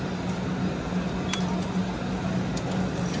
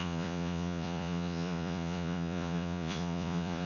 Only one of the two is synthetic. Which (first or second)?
second